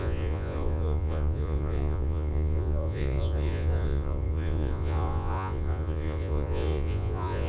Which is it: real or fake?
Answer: fake